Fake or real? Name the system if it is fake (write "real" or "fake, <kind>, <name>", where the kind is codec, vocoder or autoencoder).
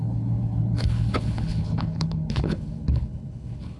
fake, codec, HILCodec